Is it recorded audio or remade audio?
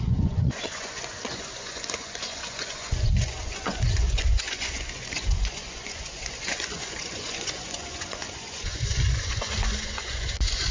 remade